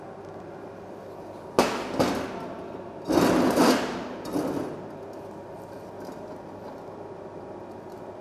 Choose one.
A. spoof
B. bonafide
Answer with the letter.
B